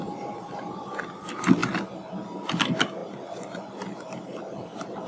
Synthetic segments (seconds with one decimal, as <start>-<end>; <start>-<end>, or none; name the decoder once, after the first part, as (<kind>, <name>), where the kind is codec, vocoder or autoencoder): none